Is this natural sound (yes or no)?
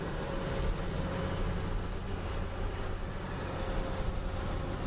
yes